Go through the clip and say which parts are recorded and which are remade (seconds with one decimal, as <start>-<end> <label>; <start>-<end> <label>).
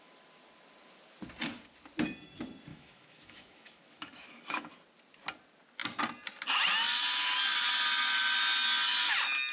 0.0-2.7 recorded; 2.7-4.7 remade; 4.7-9.5 recorded